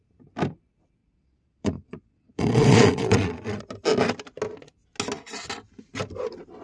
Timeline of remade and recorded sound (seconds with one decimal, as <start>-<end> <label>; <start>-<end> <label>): 0.0-1.0 recorded; 1.0-3.6 remade; 3.6-6.6 recorded